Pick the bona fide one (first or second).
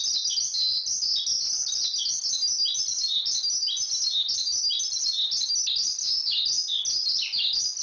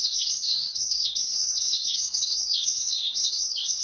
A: first